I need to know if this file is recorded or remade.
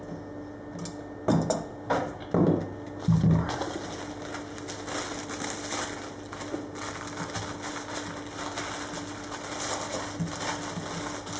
recorded